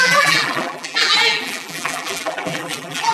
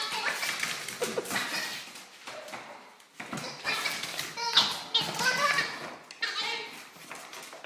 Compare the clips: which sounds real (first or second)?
second